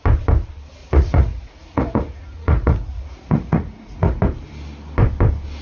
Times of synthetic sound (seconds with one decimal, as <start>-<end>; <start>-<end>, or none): 0.8-4.2